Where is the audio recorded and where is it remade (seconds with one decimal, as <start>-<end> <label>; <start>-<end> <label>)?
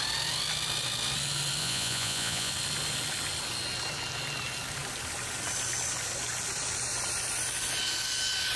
0.0-1.6 recorded; 1.6-2.5 remade; 2.5-8.6 recorded